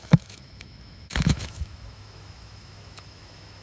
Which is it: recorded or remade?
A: remade